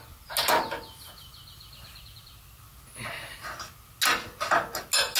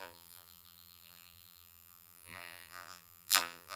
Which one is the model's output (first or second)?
second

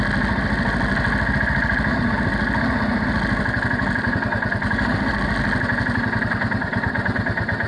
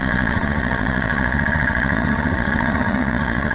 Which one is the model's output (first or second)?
second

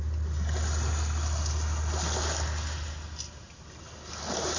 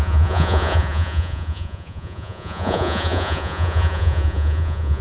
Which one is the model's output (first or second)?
second